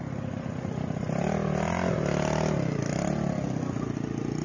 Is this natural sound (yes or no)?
yes